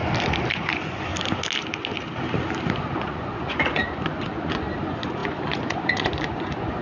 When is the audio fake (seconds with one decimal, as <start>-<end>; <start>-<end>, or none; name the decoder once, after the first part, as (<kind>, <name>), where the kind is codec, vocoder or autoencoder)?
0.5-1.1 (vocoder, Vocos); 2.8-6.8